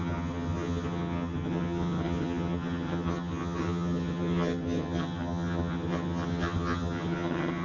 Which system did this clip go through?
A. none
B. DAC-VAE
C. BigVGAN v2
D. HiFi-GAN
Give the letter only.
D